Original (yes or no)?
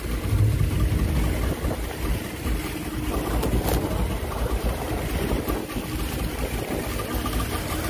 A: yes